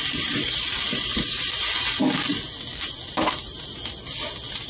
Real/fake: real